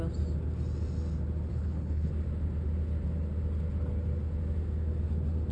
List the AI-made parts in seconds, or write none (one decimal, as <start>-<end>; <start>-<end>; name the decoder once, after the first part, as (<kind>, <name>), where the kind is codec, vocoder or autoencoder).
1.5-2.1 (codec, HILCodec)